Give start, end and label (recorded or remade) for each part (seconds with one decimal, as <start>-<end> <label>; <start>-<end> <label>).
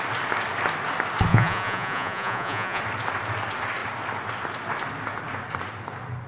0.0-1.3 recorded; 1.3-2.8 remade; 2.8-6.3 recorded